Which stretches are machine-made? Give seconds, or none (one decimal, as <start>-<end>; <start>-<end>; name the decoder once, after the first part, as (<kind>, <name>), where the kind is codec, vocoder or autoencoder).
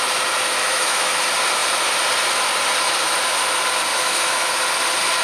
0.6-1.2 (autoencoder, DAC-VAE); 3.9-4.5